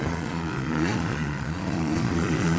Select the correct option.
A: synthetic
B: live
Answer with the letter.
A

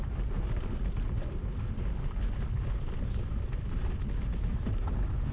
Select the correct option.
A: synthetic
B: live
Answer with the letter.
B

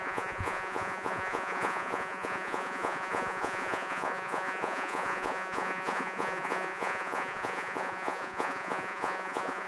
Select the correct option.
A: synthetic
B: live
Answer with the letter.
A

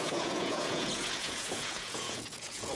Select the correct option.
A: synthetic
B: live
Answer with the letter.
A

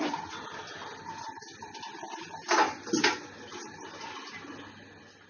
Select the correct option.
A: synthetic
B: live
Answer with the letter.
B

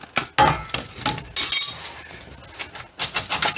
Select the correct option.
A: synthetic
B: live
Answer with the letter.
B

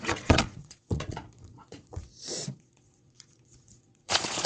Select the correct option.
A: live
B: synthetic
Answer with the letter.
B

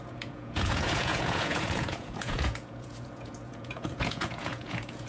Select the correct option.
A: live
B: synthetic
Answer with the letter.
B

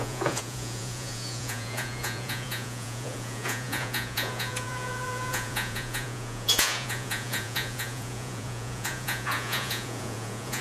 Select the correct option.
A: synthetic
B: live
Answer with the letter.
A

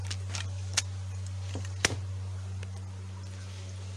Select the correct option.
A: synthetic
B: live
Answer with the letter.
B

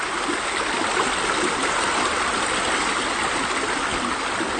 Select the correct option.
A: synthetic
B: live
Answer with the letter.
B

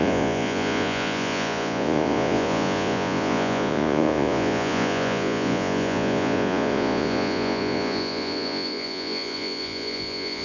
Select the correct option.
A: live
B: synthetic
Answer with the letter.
B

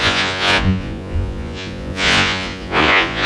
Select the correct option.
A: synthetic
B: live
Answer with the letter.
A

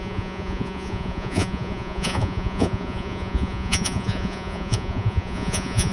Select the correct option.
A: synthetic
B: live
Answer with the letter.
A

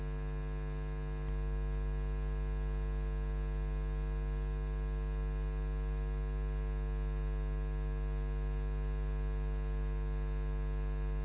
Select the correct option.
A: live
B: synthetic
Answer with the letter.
A